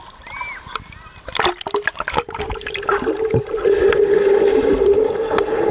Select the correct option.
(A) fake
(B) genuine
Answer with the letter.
B